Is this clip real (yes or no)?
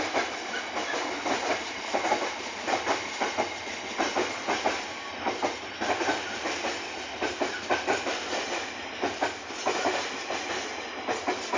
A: no